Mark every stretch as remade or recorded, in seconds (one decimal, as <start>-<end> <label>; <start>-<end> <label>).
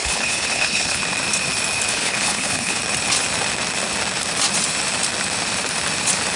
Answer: 0.0-1.0 remade; 1.0-1.9 recorded; 1.9-2.8 remade; 2.8-6.4 recorded